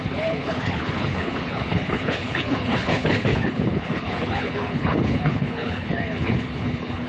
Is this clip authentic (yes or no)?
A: no